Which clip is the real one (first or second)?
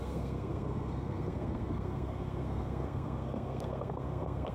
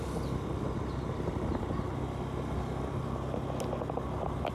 second